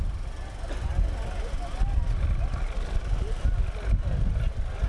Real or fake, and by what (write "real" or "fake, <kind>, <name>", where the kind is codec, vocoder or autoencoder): real